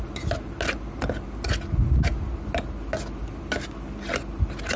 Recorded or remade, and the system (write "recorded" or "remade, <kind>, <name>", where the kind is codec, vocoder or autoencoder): recorded